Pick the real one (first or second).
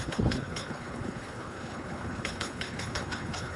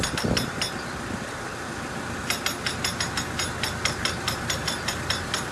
second